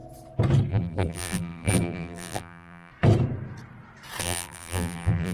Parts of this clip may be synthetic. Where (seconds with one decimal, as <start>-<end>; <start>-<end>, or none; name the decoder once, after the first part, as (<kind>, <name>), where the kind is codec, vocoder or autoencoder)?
0.7-2.9 (vocoder, BigVGAN v2); 4.2-5.3